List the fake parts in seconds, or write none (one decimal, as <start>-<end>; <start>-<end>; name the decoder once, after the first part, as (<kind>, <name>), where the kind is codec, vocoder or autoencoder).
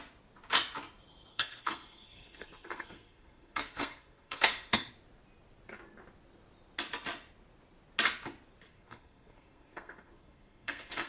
1.3-4.9 (codec, SNAC); 8.7-11.1